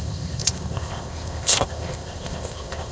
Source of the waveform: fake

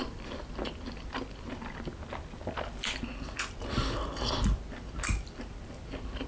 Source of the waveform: real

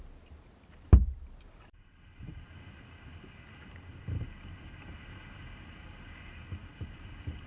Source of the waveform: real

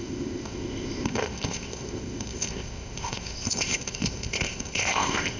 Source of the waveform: fake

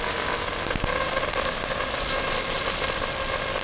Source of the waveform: real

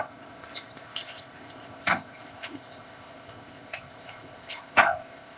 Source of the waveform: fake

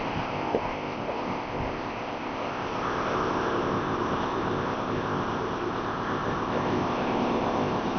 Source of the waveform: fake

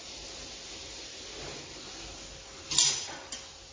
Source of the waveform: real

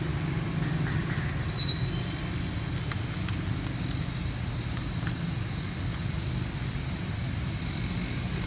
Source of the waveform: real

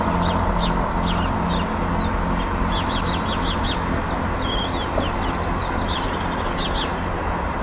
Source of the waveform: real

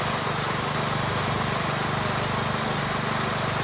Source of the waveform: real